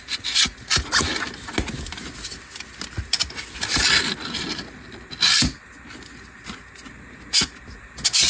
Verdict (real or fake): real